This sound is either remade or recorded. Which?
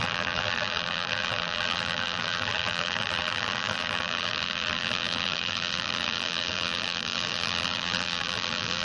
remade